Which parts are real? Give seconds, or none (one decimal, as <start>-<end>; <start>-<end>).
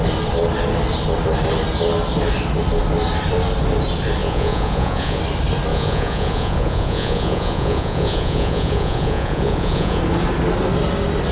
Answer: 0.0-4.2; 5.2-5.7; 10.0-11.3